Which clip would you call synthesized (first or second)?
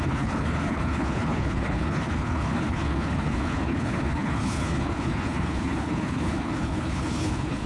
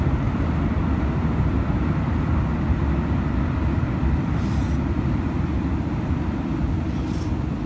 first